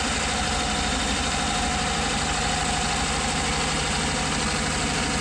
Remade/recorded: recorded